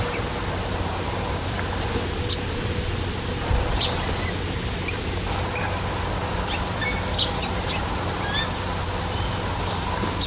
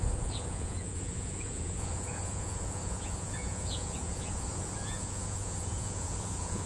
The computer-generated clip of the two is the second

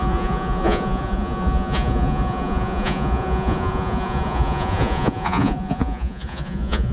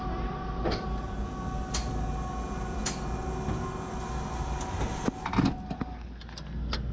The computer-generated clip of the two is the first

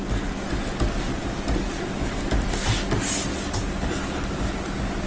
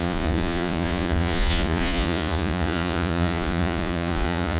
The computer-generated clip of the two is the second